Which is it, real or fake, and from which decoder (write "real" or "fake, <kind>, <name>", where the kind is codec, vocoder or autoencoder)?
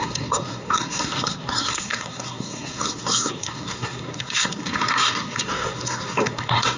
fake, codec, SNAC